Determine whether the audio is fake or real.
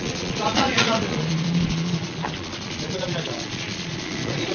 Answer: fake